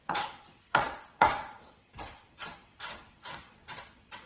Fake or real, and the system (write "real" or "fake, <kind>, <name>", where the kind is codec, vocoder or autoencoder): fake, vocoder, WaveNeXt